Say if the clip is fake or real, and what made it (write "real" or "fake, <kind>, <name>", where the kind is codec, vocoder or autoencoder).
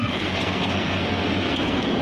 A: fake, codec, SNAC